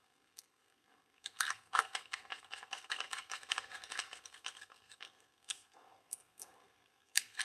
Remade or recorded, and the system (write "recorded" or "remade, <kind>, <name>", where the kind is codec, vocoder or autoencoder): remade, codec, SNAC